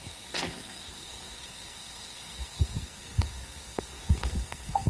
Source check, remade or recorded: remade